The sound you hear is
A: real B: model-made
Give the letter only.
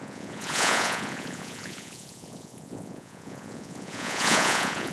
B